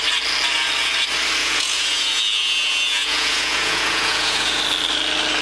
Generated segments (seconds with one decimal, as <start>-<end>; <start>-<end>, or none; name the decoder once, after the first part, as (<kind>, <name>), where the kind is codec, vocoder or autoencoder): 1.4-4.6 (vocoder, Vocos)